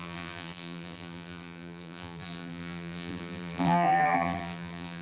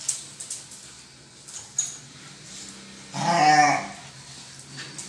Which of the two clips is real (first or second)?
second